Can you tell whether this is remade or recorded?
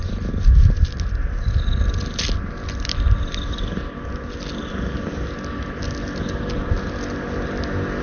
recorded